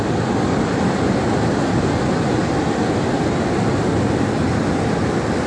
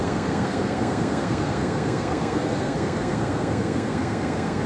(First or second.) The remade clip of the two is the second